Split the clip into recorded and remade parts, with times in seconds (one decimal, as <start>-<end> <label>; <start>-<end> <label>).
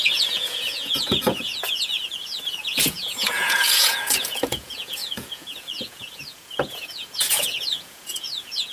0.0-8.7 remade